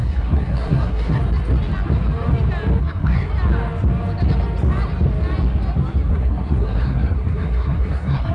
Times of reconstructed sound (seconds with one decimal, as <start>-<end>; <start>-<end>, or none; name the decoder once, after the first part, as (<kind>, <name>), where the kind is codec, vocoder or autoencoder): 0.0-1.2 (codec, SNAC); 2.8-3.3; 6.1-8.3